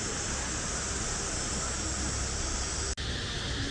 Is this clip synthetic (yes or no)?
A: no